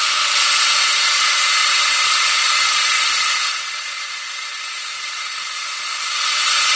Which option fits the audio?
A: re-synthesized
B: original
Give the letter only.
A